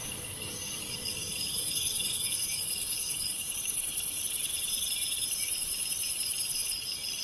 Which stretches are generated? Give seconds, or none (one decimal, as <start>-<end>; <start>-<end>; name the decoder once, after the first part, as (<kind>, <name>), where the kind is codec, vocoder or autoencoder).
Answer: 0.0-4.2 (codec, DAC)